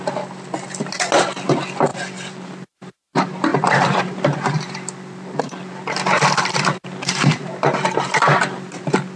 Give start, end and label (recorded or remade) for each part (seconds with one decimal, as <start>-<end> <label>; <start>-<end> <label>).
0.0-1.9 recorded; 1.9-2.5 remade; 2.5-3.5 recorded; 3.5-8.4 remade; 8.4-9.2 recorded